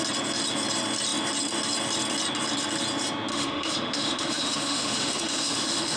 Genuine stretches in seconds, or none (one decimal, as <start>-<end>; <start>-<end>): 0.0-3.3